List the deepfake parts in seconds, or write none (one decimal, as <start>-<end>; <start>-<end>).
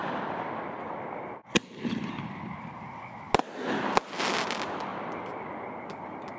none